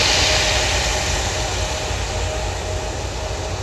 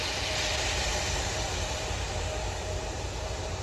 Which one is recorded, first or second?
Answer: first